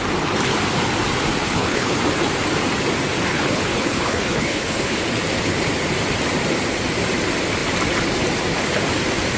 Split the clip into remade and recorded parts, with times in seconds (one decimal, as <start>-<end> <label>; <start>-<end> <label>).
0.0-1.4 recorded; 1.4-2.0 remade; 2.0-3.3 recorded; 3.3-5.0 remade; 5.0-9.4 recorded